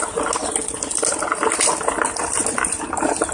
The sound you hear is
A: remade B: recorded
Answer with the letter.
B